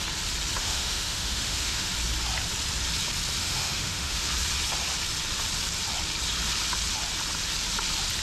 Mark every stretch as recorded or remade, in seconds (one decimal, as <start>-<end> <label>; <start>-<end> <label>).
0.0-0.6 recorded; 0.6-1.9 remade; 1.9-3.4 recorded; 3.4-4.3 remade; 4.3-8.2 recorded